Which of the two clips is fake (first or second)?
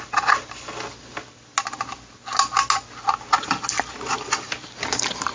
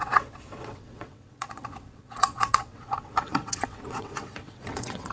second